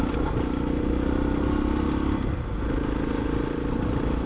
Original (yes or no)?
yes